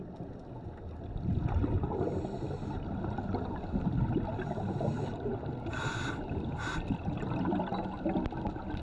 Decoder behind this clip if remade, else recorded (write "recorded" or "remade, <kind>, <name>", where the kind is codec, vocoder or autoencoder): recorded